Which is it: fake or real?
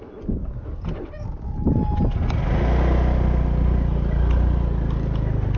real